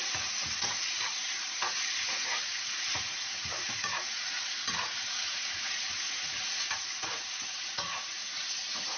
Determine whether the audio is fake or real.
fake